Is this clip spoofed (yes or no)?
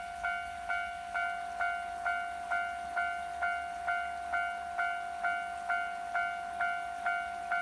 no